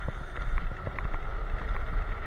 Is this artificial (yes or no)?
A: no